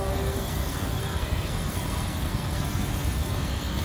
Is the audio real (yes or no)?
no